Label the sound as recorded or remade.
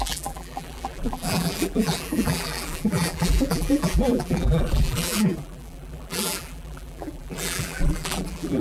remade